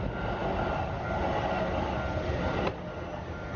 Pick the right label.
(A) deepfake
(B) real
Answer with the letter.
B